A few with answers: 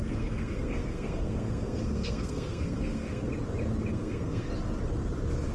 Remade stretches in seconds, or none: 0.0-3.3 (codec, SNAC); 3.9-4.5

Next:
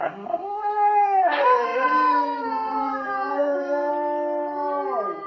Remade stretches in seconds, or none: 0.0-3.9 (codec, SNAC)

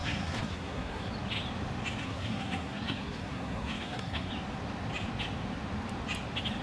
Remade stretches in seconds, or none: 0.0-1.1 (codec, SNAC); 2.0-4.3

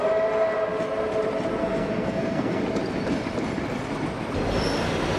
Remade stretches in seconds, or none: 1.6-2.6 (codec, SNAC)

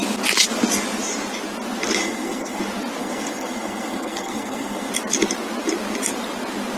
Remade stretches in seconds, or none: 2.0-2.6 (codec, SNAC); 3.0-4.9

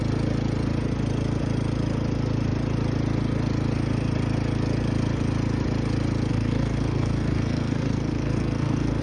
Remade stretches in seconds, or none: 6.3-9.0 (codec, SNAC)

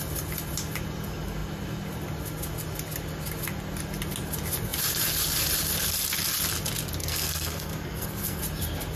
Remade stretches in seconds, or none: 7.0-8.4 (codec, SNAC)